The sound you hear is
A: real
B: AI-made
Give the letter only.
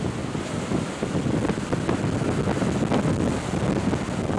A